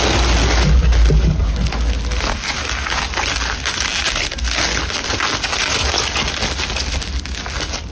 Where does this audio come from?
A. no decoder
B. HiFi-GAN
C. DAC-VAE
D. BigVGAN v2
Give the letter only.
A